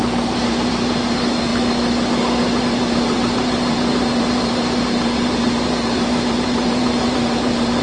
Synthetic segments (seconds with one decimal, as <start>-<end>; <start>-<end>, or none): 0.0-1.5; 2.6-7.8

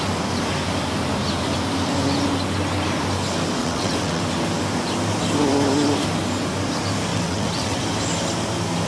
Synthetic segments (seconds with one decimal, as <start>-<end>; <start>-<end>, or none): 3.6-4.2; 7.1-7.8

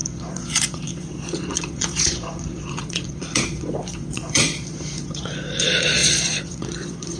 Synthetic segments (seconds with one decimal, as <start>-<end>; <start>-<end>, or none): 0.0-7.2

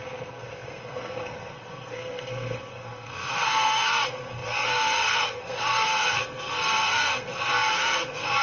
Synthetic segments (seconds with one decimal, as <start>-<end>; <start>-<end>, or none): 0.0-8.4

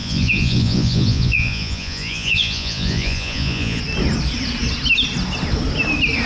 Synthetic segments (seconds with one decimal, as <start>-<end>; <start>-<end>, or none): 0.0-3.8

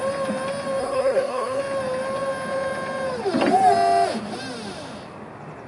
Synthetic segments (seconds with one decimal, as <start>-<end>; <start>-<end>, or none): 0.8-1.6

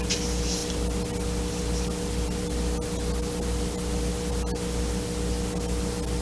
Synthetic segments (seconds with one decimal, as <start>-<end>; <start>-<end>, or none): none

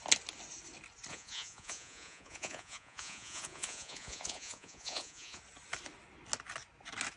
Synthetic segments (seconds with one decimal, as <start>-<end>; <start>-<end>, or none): 1.1-5.4